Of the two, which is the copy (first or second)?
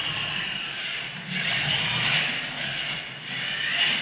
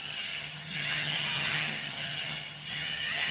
second